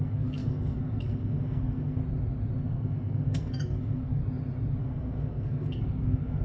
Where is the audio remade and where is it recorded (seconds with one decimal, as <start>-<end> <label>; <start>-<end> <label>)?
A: 0.0-2.0 remade; 2.0-2.6 recorded; 2.6-4.2 remade; 4.2-4.8 recorded; 4.8-6.4 remade